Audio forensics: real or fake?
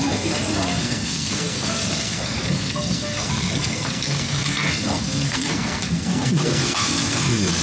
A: fake